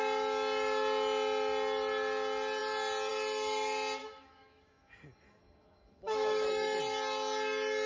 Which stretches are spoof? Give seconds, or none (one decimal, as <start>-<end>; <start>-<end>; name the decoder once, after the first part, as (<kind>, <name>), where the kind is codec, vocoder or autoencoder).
4.0-6.8 (autoencoder, DAC-VAE)